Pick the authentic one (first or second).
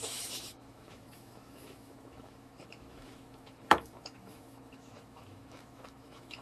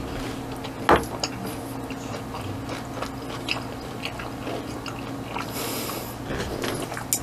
second